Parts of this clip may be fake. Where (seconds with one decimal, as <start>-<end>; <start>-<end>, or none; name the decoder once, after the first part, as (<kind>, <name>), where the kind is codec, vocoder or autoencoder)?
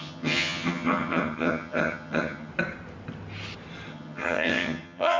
0.0-2.5 (vocoder, HiFi-GAN); 3.9-5.2